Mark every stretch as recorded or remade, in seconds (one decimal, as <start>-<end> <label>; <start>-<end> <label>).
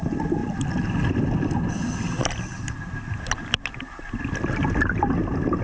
0.0-5.6 recorded